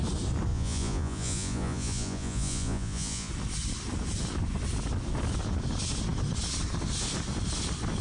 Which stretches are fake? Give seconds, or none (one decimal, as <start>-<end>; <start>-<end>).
0.5-3.3